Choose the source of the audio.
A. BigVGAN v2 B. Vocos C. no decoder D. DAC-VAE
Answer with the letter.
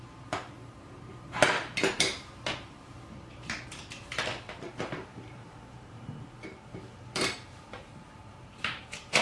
A